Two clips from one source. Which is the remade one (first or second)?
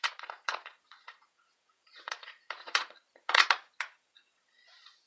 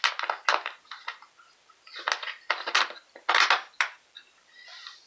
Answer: first